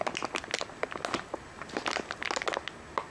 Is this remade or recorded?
recorded